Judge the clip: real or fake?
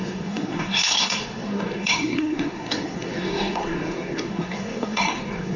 fake